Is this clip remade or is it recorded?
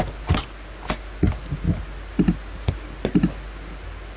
recorded